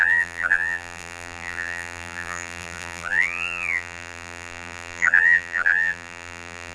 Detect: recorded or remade remade